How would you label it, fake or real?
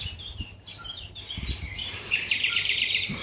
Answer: fake